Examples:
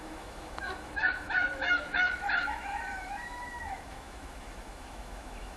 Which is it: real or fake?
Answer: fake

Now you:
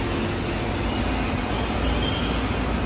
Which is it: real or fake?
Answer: real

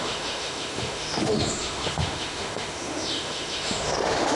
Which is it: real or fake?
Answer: fake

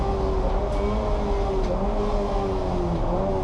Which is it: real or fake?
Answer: real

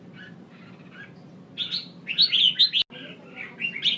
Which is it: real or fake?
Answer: real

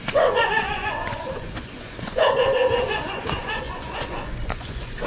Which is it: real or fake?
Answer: fake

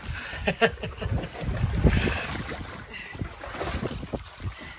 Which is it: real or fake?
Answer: real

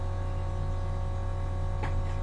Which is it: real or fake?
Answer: real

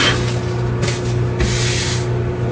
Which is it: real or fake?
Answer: real